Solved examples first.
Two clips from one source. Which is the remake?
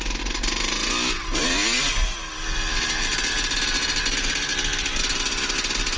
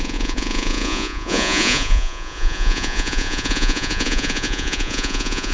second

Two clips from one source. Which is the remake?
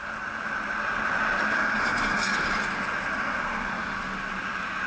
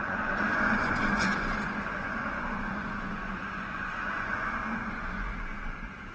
second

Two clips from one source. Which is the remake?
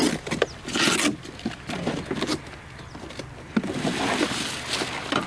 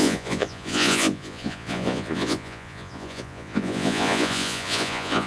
second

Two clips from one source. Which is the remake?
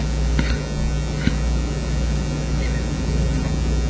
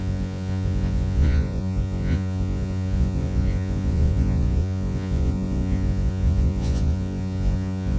second